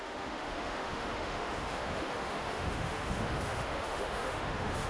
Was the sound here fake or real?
fake